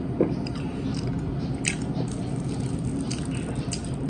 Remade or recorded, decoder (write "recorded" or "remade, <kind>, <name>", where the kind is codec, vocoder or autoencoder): recorded